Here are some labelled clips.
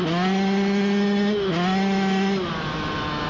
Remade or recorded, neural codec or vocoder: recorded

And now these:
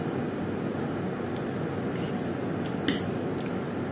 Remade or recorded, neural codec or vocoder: recorded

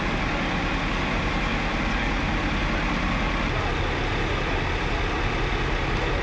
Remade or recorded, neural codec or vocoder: recorded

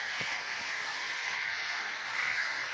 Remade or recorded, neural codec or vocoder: remade, codec, SNAC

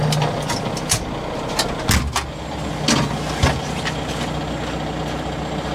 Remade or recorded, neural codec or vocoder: recorded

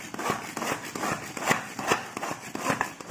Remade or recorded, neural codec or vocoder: recorded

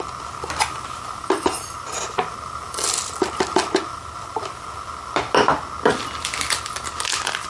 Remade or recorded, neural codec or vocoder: recorded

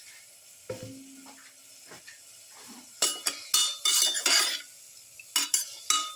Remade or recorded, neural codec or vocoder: recorded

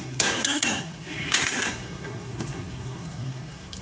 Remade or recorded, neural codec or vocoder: remade, codec, SNAC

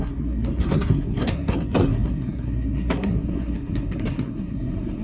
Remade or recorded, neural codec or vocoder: remade, codec, SNAC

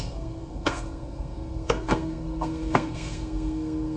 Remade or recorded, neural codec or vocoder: remade, codec, SNAC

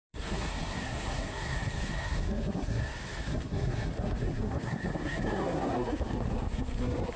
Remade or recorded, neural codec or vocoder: remade, codec, SNAC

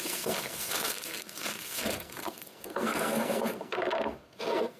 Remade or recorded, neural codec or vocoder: remade, codec, SNAC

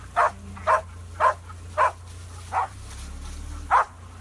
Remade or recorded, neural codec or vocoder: recorded